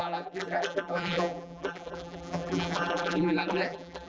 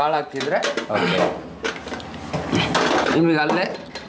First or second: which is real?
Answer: second